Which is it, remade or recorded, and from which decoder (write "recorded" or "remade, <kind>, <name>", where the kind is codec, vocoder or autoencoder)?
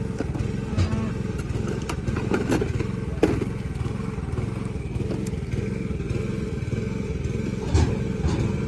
recorded